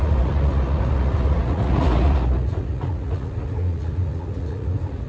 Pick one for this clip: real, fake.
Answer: fake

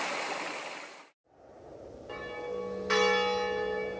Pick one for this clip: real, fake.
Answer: real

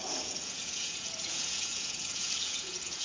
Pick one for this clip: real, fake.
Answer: fake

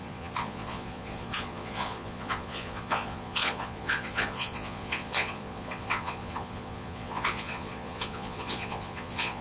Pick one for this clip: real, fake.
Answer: fake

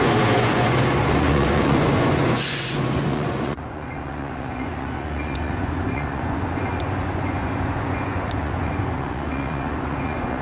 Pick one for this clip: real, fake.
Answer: fake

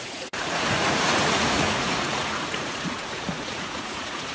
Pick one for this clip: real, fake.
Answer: fake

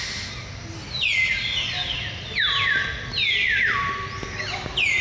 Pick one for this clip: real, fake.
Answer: real